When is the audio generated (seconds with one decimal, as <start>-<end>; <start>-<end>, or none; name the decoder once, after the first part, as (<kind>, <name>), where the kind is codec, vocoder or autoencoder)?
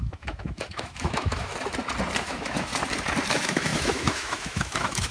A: 0.0-1.5 (autoencoder, DAC-VAE); 2.2-2.7; 3.3-5.1